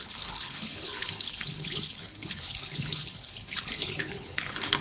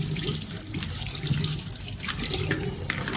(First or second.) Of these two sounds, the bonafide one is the second